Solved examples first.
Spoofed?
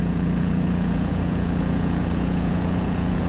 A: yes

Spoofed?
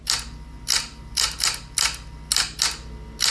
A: no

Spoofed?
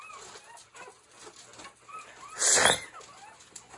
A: no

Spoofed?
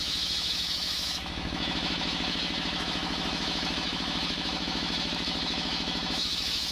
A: yes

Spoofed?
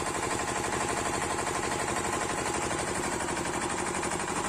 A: yes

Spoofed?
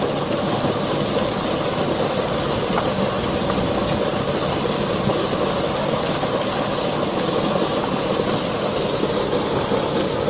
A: no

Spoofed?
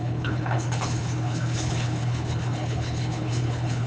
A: yes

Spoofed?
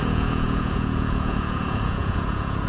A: yes